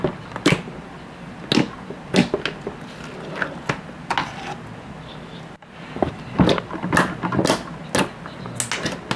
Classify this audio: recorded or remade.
recorded